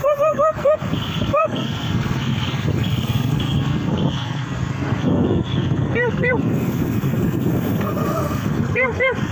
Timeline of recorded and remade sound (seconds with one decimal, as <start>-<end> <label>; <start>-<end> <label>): 0.0-9.3 remade